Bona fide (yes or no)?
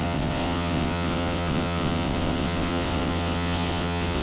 no